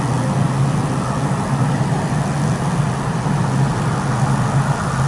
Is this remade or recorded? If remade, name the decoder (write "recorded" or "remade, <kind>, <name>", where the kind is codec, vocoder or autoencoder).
recorded